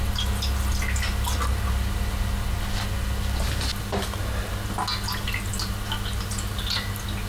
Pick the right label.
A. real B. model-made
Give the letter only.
A